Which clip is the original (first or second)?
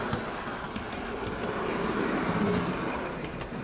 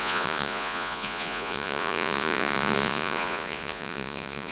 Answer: first